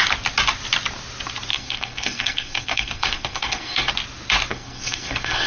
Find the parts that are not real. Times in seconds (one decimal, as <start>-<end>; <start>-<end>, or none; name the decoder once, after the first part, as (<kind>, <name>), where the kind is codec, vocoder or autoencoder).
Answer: 1.5-3.9 (codec, SNAC); 4.5-5.5